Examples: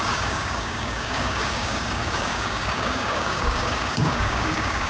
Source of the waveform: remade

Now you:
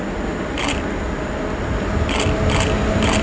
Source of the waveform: recorded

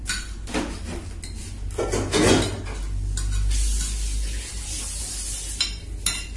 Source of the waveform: recorded